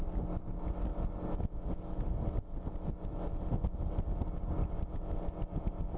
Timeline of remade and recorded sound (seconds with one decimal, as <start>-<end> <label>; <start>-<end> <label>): 0.0-6.0 recorded